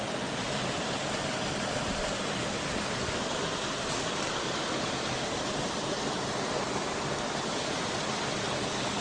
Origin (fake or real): real